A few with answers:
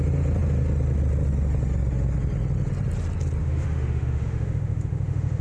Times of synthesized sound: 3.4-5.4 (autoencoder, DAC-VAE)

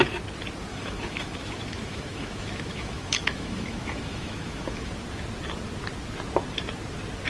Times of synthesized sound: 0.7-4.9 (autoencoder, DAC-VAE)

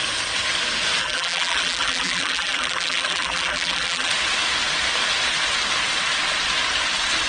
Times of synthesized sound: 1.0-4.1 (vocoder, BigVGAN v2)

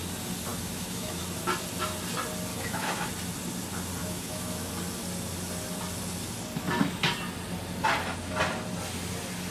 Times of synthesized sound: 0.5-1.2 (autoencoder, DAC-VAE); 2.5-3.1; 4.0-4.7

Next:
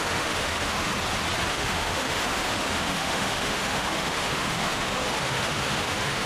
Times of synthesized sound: 0.0-0.9 (autoencoder, DAC-VAE); 1.5-6.3

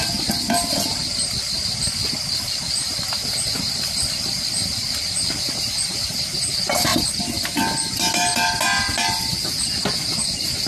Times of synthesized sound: none

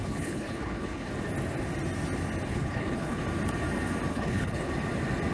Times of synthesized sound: 0.0-1.1 (codec, HILCodec); 2.5-3.2; 4.1-4.7

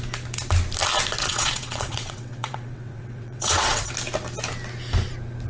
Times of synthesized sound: 1.2-3.9 (vocoder, WaveNeXt)